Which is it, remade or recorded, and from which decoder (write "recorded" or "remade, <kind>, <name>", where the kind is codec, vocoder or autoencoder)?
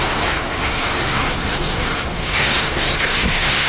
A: remade, codec, SNAC